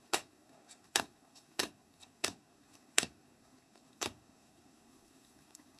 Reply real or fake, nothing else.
fake